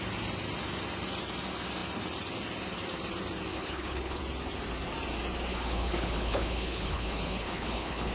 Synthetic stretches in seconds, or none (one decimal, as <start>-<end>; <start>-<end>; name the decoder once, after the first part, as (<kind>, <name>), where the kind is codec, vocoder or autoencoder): 3.5-4.2 (codec, HILCodec); 5.5-8.1